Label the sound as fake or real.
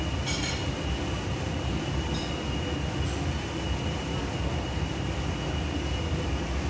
real